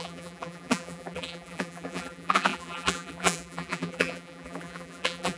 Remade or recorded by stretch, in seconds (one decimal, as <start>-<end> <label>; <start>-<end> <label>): 0.0-5.4 remade